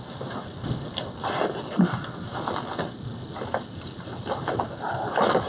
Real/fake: real